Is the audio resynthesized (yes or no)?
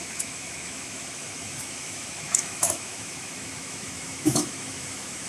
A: yes